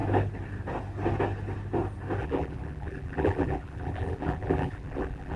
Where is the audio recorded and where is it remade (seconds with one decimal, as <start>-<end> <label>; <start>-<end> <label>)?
0.0-2.2 recorded; 2.2-5.4 remade